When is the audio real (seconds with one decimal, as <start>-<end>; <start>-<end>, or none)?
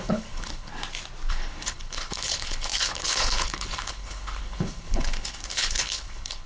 0.7-1.3